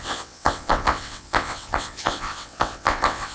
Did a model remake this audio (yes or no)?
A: yes